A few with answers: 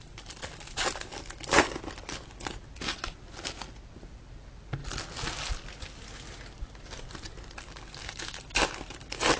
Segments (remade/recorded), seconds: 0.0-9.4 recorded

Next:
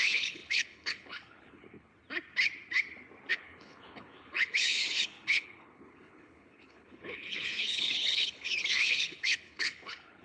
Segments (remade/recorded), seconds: 0.0-1.9 remade; 1.9-3.3 recorded; 3.3-10.2 remade